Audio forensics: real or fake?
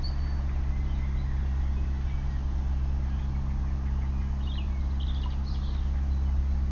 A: real